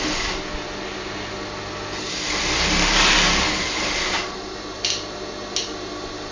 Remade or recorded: recorded